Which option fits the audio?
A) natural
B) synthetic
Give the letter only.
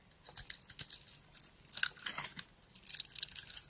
A